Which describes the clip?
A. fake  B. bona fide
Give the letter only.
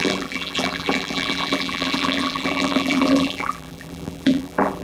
A